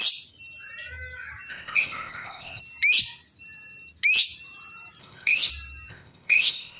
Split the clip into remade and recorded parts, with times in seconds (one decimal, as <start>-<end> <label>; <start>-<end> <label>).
0.0-1.5 recorded; 1.5-2.6 remade; 2.6-5.0 recorded; 5.0-5.5 remade; 5.5-5.9 recorded; 5.9-6.8 remade